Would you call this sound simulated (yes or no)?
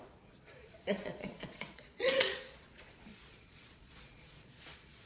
yes